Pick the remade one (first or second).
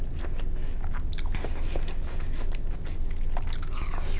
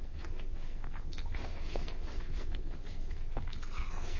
second